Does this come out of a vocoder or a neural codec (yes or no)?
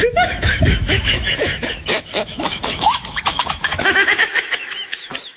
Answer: yes